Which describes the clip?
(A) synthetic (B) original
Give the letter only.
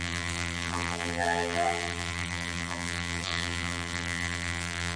A